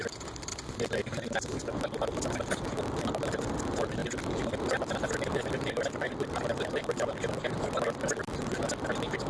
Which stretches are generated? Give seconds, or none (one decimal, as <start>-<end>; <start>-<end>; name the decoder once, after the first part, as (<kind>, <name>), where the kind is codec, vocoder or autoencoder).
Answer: none